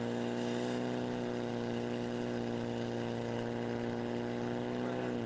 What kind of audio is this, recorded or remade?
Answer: recorded